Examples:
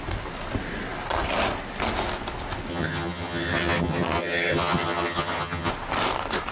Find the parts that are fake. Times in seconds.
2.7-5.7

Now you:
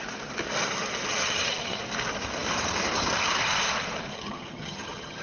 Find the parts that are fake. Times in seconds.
1.1-1.8; 4.1-5.2

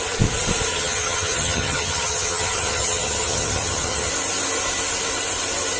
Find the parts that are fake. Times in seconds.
0.7-4.1

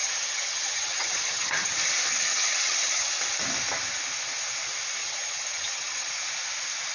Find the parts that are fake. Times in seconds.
0.0-1.7; 2.3-3.2; 5.0-6.1

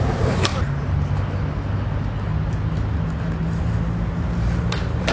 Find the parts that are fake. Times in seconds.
none

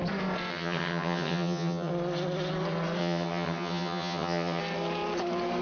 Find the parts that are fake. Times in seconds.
0.5-1.9; 3.0-4.6

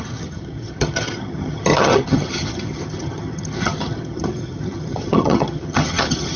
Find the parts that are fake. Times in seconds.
0.0-6.4

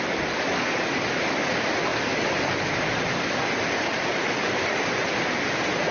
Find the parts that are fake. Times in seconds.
none